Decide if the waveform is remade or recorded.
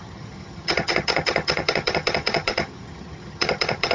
remade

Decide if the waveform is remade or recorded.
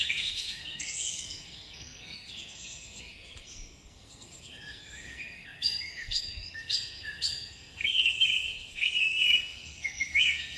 remade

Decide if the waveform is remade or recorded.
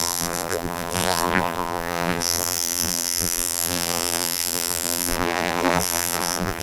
remade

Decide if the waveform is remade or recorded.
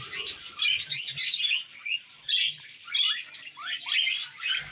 recorded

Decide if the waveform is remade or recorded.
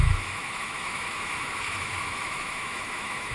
remade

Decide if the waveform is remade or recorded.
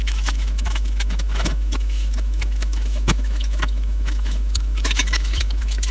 remade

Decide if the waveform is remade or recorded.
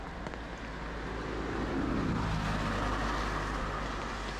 recorded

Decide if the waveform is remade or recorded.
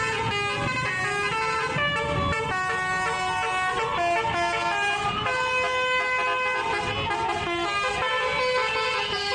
recorded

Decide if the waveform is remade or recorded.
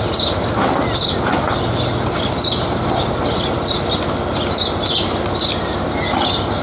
recorded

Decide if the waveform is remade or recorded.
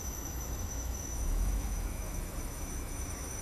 remade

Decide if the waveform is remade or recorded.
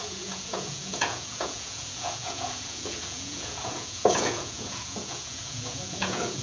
remade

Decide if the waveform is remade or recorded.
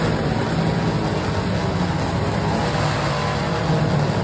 recorded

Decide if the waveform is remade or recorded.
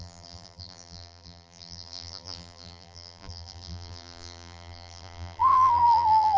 remade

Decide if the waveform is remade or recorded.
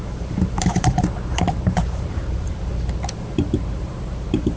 remade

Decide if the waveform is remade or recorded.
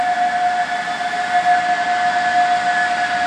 recorded